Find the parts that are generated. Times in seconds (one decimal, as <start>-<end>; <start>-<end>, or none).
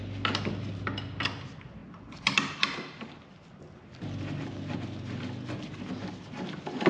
none